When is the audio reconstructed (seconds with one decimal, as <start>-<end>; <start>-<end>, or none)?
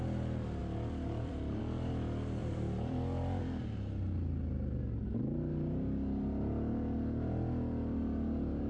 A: 0.6-1.6; 2.4-3.4